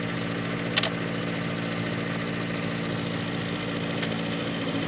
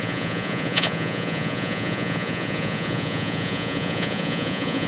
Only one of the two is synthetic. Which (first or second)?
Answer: second